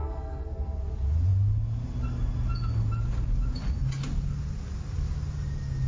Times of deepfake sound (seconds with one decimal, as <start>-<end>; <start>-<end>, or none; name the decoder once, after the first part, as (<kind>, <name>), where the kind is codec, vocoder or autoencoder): 0.0-0.8 (codec, SNAC)